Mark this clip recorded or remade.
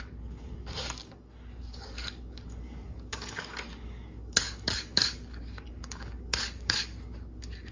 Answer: remade